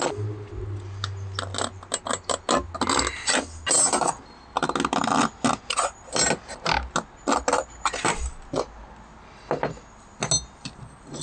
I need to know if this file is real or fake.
real